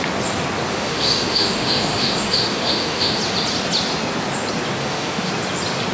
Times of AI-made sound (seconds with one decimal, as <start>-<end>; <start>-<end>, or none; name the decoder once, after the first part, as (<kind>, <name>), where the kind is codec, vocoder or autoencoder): 0.7-3.2 (autoencoder, DAC-VAE); 4.8-5.3